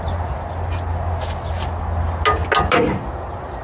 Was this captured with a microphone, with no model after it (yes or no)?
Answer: yes